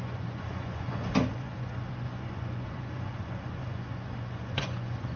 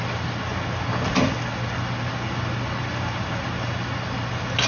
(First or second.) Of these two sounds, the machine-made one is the first